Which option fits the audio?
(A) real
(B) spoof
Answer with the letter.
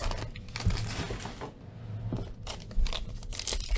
A